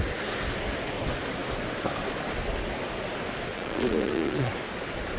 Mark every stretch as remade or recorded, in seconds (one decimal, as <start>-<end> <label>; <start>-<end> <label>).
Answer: 0.0-3.5 recorded; 3.5-4.5 remade; 4.5-5.2 recorded